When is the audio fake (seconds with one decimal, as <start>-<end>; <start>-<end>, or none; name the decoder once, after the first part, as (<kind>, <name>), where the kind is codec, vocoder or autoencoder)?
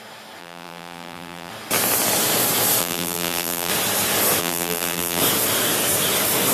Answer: 0.4-1.5 (vocoder, BigVGAN v2); 2.8-3.7; 4.4-5.2